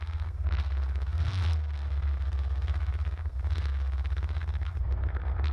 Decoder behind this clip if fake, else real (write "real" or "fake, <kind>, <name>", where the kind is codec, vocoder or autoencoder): fake, codec, SNAC